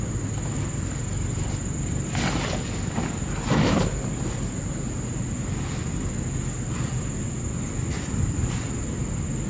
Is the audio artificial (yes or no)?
no